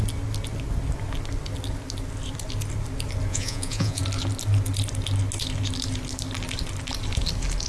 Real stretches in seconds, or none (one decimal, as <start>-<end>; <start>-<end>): 0.0-3.3; 4.0-7.7